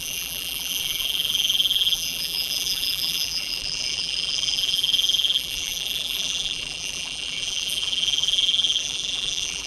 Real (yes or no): no